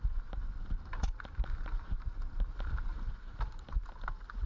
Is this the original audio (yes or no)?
yes